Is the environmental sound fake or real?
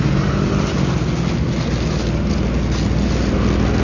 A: real